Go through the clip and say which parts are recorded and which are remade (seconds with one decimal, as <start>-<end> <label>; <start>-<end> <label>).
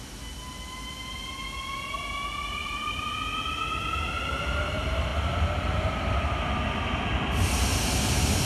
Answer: 0.0-8.5 recorded